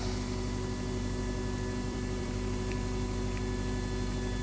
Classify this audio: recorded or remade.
remade